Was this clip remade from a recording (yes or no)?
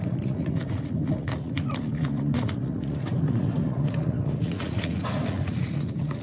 yes